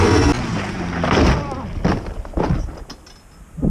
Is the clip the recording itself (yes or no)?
yes